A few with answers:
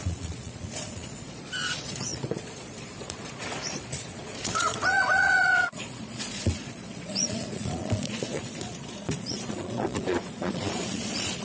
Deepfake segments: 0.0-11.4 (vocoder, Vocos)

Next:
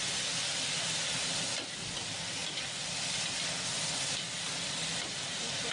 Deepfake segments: none